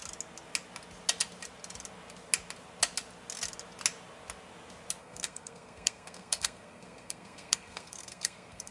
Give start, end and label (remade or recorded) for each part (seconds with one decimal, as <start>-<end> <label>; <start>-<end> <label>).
0.0-5.0 recorded; 5.0-8.7 remade